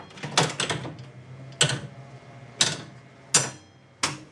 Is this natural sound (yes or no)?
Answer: yes